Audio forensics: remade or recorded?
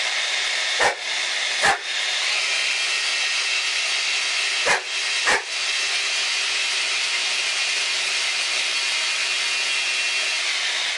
recorded